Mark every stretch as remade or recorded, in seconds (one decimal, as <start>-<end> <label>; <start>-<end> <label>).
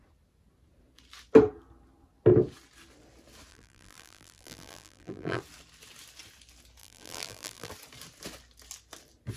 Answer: 0.0-3.5 recorded; 3.5-5.4 remade; 5.4-6.8 recorded; 6.8-7.7 remade; 7.7-9.4 recorded